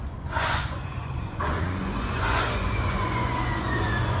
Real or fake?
fake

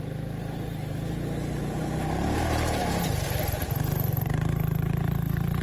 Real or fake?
fake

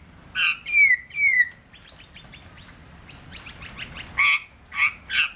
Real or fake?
real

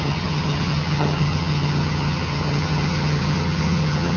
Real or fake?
fake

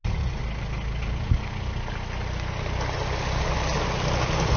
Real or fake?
real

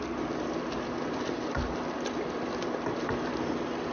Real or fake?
real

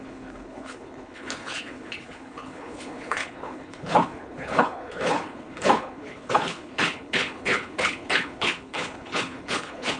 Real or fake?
fake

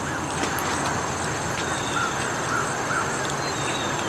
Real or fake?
real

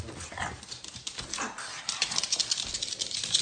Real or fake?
real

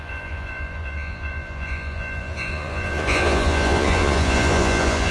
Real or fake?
fake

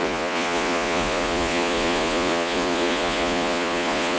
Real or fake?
fake